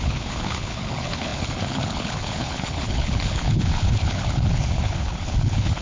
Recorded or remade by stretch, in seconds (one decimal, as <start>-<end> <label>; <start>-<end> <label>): 0.0-5.8 remade